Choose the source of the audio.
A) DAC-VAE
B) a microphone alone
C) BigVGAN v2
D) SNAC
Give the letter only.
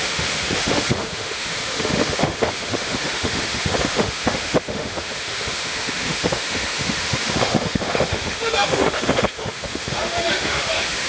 A